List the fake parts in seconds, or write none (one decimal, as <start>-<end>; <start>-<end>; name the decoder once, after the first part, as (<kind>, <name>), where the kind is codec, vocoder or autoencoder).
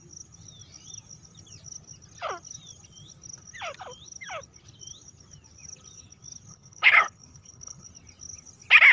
6.5-7.9 (codec, HILCodec)